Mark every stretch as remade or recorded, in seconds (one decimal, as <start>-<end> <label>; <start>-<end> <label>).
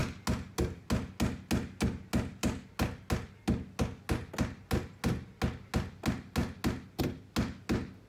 0.0-8.1 recorded